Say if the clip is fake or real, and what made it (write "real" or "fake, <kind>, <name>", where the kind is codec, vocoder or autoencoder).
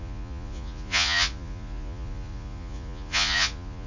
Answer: fake, vocoder, Vocos